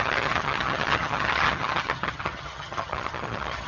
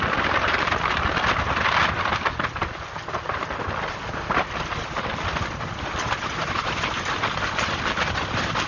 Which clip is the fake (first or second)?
first